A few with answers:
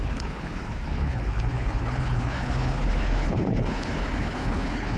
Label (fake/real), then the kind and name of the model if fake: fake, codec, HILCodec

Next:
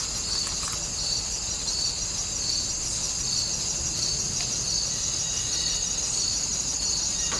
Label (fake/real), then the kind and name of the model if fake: real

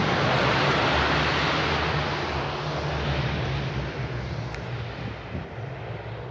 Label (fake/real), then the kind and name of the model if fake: real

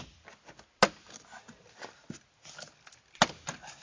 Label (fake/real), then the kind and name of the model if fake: real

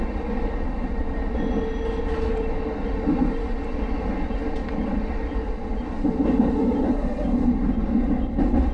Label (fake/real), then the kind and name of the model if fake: real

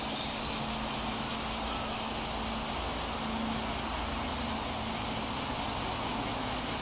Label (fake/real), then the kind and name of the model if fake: real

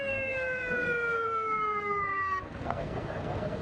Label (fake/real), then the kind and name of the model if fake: fake, codec, SNAC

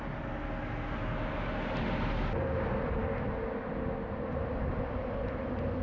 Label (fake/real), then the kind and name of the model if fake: real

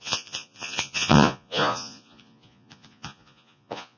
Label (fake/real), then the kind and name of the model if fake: fake, vocoder, Vocos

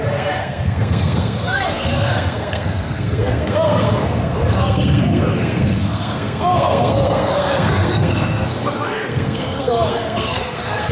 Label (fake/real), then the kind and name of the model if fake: fake, codec, SNAC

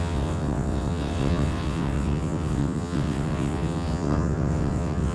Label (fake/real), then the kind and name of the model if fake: fake, vocoder, WaveNeXt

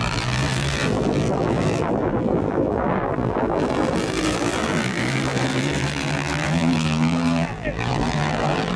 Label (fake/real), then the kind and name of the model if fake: fake, vocoder, BigVGAN v2